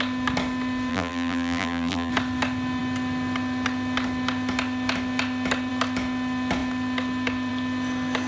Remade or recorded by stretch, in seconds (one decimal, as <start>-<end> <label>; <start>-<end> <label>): 0.0-0.9 recorded; 0.9-2.1 remade; 2.1-8.3 recorded